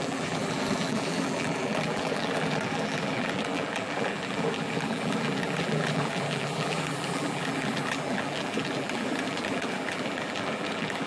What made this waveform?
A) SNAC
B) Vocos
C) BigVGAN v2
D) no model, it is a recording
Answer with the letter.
C